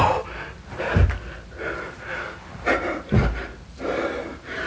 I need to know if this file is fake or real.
real